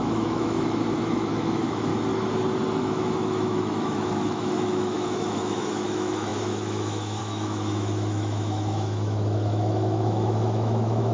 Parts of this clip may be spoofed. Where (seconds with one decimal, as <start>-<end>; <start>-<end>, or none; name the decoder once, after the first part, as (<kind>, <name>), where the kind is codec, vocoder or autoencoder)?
0.0-1.9 (autoencoder, DAC-VAE); 2.8-11.1